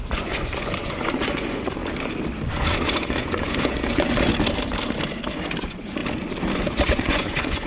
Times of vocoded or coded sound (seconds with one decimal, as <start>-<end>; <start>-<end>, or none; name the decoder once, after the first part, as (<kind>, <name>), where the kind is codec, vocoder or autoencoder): 0.0-1.8 (vocoder, Vocos); 2.5-4.3; 5.6-6.0; 6.5-7.7